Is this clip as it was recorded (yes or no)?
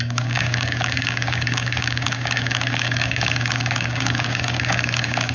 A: no